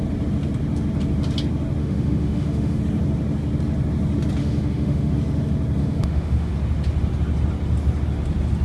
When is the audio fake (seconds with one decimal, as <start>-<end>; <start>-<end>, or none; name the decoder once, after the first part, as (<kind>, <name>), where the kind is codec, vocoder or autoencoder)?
1.8-2.8 (autoencoder, DAC-VAE); 4.4-5.1; 5.8-6.5